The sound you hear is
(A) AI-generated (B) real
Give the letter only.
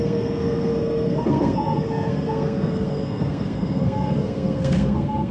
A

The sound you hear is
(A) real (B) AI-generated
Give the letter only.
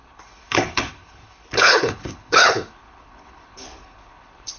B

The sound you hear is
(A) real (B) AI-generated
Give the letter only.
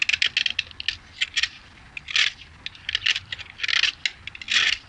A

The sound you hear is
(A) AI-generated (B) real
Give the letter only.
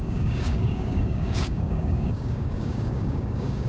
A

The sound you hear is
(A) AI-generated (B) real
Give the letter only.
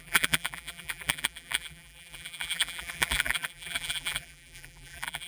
A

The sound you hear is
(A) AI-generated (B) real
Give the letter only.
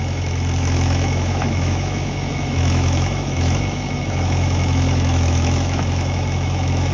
A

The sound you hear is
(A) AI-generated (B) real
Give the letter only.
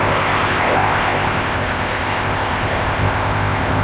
A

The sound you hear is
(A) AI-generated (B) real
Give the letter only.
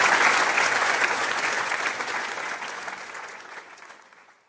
A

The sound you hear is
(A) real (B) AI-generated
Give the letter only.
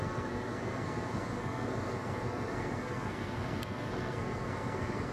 B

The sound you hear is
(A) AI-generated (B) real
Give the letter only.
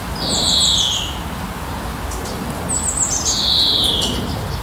B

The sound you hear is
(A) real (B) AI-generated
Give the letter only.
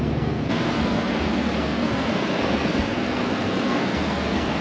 B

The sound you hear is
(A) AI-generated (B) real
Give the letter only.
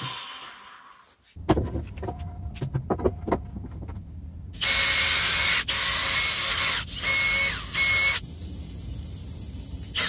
B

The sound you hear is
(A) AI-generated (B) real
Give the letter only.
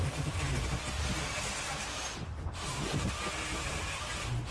B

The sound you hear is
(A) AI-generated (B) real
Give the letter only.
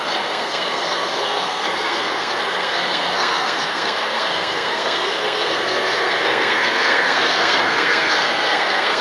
A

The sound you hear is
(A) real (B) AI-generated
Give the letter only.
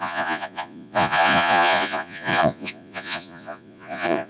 B